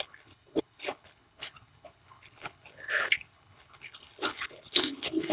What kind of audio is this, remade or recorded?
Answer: remade